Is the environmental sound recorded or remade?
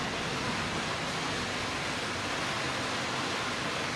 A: recorded